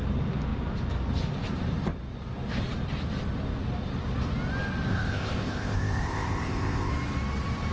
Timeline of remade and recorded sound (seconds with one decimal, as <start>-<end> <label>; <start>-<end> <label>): 0.0-4.9 recorded; 4.9-6.9 remade; 6.9-7.7 recorded